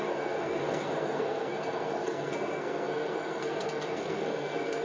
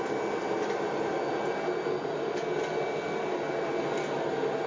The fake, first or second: first